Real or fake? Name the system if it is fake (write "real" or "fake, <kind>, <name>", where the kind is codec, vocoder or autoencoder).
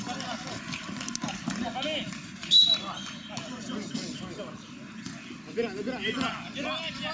real